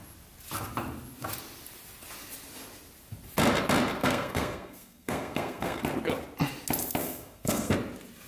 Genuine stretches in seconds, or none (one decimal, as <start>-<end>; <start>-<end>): 0.0-4.0; 5.8-7.0; 7.7-8.3